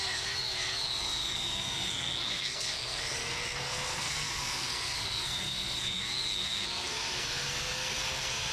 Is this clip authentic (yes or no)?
no